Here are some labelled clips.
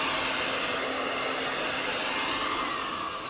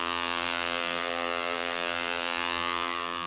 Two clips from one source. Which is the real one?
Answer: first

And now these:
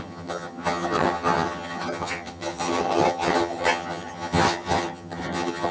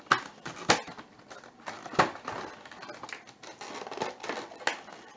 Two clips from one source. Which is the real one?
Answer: second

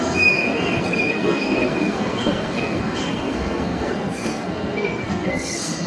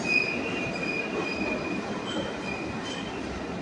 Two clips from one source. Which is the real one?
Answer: second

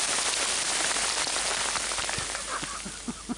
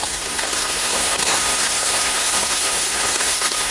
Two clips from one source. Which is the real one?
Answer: first